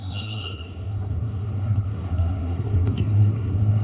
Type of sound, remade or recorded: remade